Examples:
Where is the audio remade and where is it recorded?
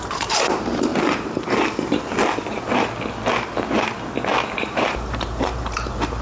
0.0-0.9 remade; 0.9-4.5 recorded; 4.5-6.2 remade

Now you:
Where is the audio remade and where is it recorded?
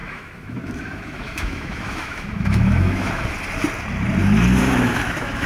0.0-3.3 remade; 3.3-4.6 recorded; 4.6-5.5 remade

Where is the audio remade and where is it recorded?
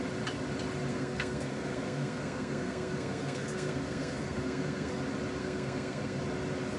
0.0-0.9 recorded; 0.9-5.0 remade; 5.0-5.4 recorded; 5.4-6.2 remade; 6.2-6.8 recorded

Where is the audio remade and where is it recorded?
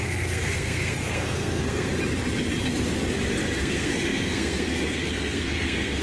0.0-1.9 remade; 1.9-3.6 recorded; 3.6-6.0 remade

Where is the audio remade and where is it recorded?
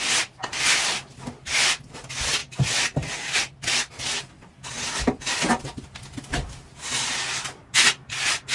0.0-8.5 recorded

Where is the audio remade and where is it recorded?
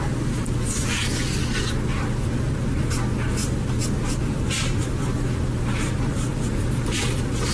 0.0-3.4 recorded; 3.4-5.1 remade; 5.1-6.3 recorded; 6.3-7.0 remade; 7.0-7.5 recorded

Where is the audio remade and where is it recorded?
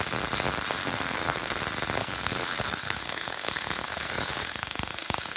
0.0-0.8 recorded; 0.8-1.6 remade; 1.6-2.0 recorded; 2.0-5.4 remade